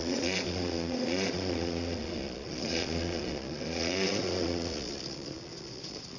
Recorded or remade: remade